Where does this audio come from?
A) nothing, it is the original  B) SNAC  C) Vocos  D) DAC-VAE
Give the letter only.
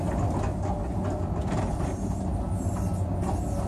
A